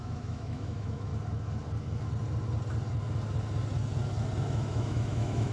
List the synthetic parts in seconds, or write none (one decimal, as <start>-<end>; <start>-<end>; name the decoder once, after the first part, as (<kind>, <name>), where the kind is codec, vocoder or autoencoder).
0.0-1.1 (autoencoder, DAC-VAE); 4.4-5.5